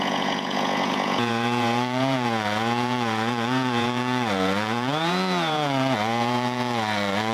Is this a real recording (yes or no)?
no